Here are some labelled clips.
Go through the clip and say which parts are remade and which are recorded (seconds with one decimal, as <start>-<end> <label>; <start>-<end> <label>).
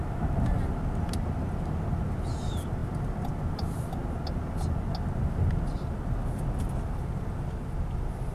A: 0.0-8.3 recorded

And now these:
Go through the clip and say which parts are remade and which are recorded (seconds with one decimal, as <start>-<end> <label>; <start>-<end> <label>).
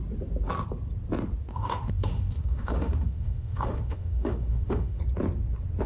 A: 0.0-1.5 recorded; 1.5-5.0 remade; 5.0-5.9 recorded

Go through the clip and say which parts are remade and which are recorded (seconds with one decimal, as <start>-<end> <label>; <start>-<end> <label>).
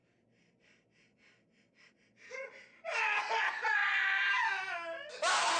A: 0.0-5.6 recorded